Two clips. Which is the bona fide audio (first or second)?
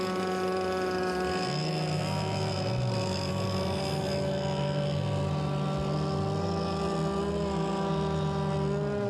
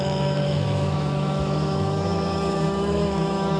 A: first